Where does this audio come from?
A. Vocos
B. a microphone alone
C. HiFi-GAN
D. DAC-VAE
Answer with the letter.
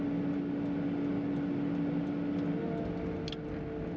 B